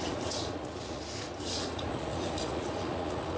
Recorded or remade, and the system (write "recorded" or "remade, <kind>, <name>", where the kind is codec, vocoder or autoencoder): remade, vocoder, Vocos